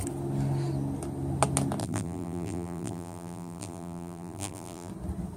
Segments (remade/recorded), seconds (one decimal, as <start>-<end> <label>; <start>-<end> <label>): 0.0-1.8 recorded; 1.8-4.9 remade; 4.9-5.4 recorded